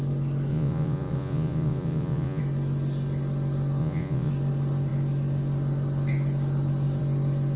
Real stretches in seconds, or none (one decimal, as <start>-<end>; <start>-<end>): 0.0-0.5; 2.4-3.8; 4.3-7.6